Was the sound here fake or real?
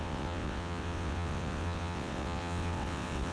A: fake